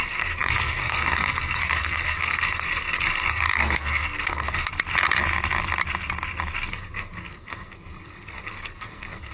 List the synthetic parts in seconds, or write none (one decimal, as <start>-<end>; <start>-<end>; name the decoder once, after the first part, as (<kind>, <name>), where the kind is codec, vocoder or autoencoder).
0.0-4.7 (codec, SNAC); 6.7-9.3